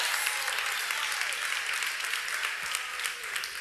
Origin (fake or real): real